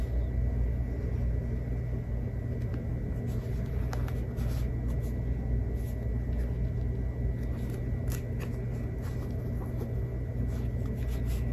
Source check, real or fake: real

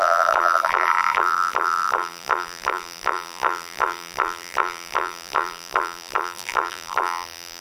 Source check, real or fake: fake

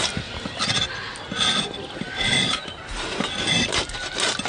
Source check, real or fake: real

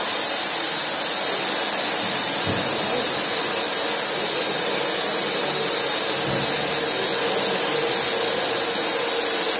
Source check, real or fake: real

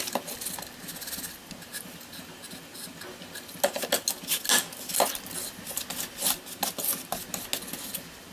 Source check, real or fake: real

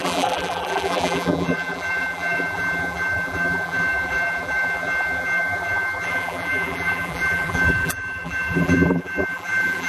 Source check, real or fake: fake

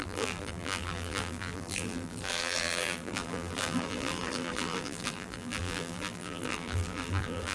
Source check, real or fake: fake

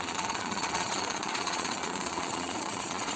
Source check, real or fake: fake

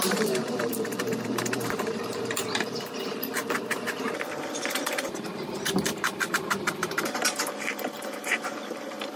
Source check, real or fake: fake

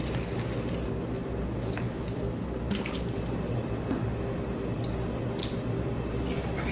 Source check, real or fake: real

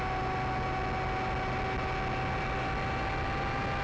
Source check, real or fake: real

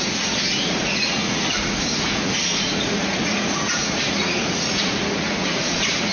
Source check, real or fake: fake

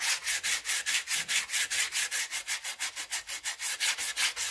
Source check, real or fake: real